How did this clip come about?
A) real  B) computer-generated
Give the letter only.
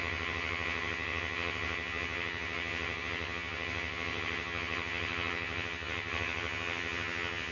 B